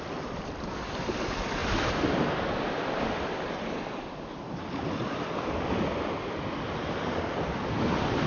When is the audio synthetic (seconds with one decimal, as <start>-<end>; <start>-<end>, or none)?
0.0-1.6; 3.0-8.3